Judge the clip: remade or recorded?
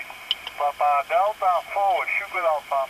recorded